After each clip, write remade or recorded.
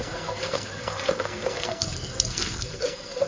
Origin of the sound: remade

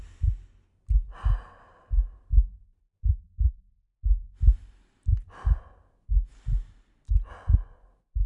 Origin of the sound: recorded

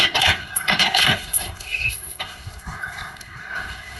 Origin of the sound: remade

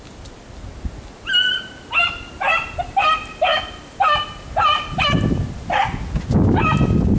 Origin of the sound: recorded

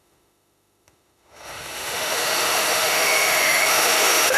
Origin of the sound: remade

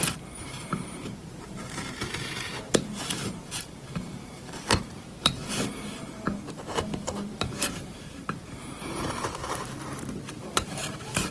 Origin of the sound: remade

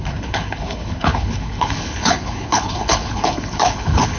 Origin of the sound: remade